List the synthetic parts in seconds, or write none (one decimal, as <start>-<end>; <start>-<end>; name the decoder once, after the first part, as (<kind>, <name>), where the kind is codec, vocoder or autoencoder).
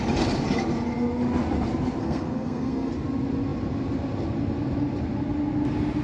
2.0-2.9 (codec, SNAC)